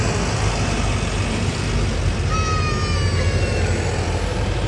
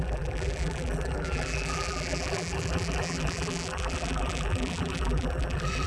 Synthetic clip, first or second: second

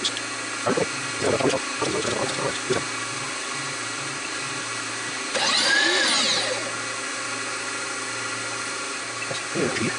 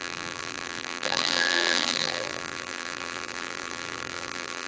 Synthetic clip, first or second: second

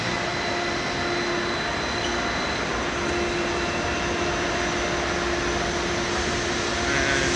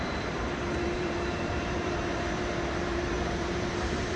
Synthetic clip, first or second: second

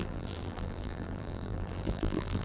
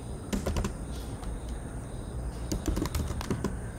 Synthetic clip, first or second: first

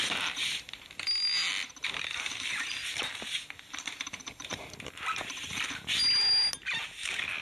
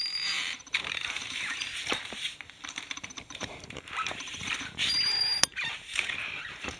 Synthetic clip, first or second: second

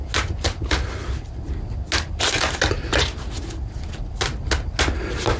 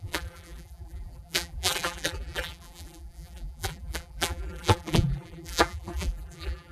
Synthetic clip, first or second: second